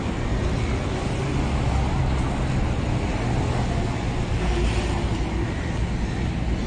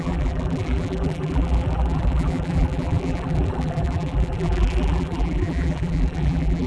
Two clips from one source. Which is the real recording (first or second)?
first